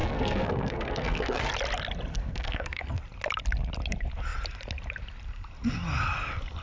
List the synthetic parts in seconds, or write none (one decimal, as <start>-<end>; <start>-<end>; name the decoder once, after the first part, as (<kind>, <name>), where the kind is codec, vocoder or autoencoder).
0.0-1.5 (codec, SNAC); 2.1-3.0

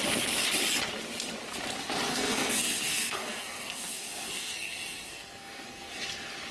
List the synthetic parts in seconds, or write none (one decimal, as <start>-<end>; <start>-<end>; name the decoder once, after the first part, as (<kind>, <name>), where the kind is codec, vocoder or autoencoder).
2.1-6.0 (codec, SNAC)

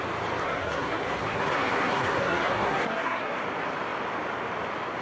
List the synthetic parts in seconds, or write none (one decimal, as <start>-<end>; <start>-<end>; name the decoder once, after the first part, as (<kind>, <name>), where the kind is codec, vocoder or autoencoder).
0.4-3.4 (codec, SNAC)

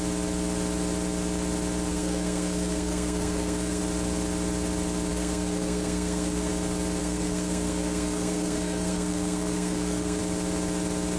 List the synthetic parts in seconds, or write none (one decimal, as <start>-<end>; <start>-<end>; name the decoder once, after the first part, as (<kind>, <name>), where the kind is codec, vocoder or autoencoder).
1.9-3.8 (codec, SNAC); 5.1-6.5; 7.0-10.2

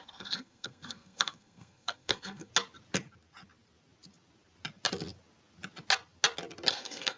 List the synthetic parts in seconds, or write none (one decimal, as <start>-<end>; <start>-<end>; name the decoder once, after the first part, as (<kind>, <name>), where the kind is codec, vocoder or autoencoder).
0.0-2.5 (codec, SNAC); 6.7-7.2

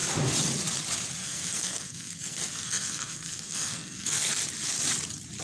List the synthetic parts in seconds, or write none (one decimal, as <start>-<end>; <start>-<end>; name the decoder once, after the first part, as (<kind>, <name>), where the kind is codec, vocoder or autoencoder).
1.2-4.4 (codec, SNAC)